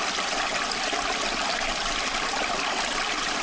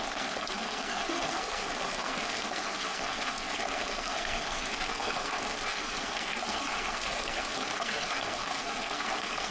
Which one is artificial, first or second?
second